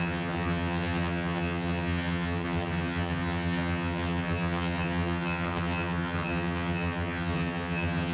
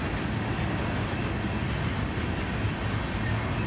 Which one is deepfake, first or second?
first